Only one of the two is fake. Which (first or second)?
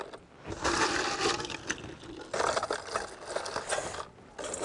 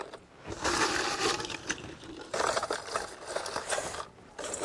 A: second